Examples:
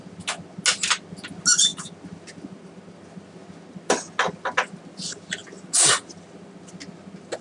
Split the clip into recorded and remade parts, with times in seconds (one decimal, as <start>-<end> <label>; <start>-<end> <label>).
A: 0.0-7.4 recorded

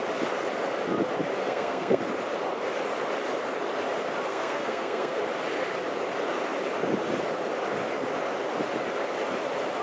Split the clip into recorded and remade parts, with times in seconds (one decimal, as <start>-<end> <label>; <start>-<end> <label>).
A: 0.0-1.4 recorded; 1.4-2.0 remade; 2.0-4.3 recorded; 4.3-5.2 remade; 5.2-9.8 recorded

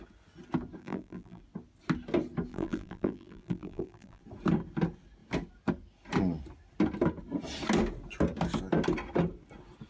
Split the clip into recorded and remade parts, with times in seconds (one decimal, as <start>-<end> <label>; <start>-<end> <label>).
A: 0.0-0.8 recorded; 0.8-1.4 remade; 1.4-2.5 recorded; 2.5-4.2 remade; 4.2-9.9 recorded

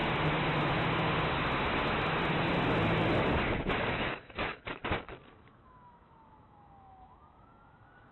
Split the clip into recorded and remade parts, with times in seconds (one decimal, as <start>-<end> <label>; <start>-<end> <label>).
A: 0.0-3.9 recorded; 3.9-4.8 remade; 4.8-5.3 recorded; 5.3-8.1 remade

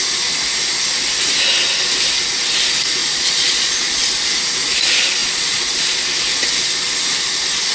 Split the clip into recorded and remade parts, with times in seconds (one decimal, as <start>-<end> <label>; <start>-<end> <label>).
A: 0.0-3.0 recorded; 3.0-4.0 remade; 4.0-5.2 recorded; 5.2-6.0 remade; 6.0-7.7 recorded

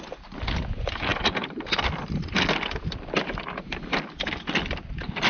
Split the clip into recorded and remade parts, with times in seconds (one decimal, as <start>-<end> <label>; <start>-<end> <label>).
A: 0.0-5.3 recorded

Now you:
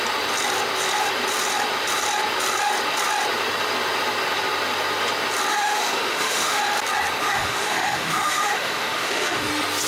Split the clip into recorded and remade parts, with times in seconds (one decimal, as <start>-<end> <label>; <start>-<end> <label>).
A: 0.0-5.5 recorded; 5.5-6.6 remade; 6.6-7.2 recorded; 7.2-9.5 remade; 9.5-9.9 recorded

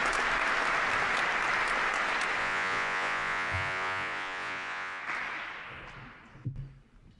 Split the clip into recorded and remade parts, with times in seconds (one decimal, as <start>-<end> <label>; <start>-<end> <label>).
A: 0.0-2.4 recorded; 2.4-5.0 remade; 5.0-7.2 recorded